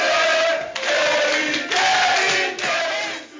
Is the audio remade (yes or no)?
no